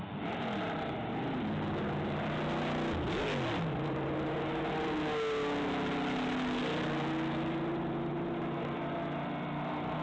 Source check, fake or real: real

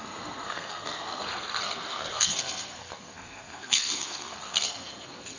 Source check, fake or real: fake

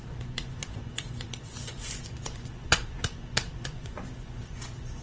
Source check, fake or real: fake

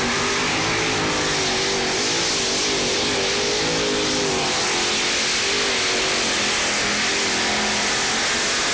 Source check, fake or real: real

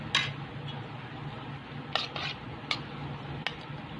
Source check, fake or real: real